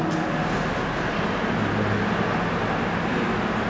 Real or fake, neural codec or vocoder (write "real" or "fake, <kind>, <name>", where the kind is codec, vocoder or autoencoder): real